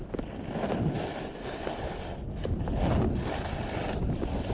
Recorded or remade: recorded